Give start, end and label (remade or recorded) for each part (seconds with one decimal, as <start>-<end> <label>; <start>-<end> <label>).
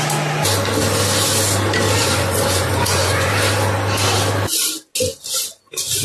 0.0-2.0 recorded; 2.0-3.3 remade; 3.3-6.0 recorded